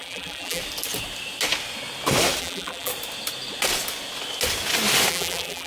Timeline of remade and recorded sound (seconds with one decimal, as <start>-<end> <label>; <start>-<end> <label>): 0.0-0.6 remade; 0.6-2.4 recorded; 2.4-2.9 remade; 2.9-5.1 recorded; 5.1-5.7 remade